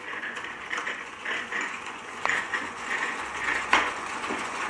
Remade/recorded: remade